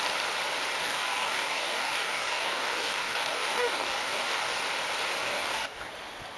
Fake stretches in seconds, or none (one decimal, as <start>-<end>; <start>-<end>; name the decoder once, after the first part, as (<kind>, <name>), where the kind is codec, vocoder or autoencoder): 0.8-4.6 (codec, DAC); 5.2-5.9